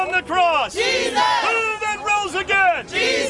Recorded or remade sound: recorded